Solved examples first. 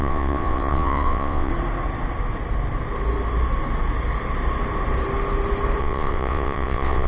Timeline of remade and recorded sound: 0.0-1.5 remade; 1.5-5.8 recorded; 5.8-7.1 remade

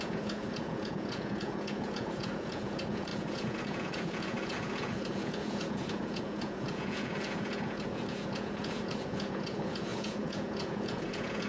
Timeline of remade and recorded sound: 0.0-11.5 remade